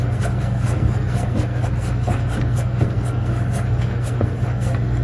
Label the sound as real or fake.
fake